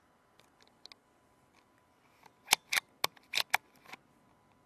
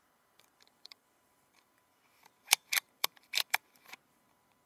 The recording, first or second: first